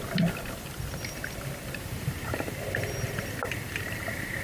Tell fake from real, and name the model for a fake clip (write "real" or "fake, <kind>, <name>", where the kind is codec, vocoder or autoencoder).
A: real